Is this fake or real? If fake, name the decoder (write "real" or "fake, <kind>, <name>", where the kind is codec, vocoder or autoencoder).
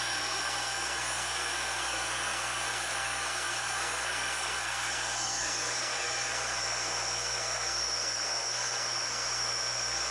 fake, codec, SNAC